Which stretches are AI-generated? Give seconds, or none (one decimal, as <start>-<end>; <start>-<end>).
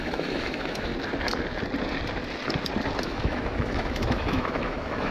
0.0-0.9; 3.0-5.1